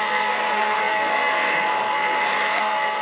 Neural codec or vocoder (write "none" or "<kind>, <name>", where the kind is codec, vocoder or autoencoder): codec, SNAC